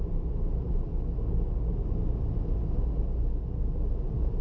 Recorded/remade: recorded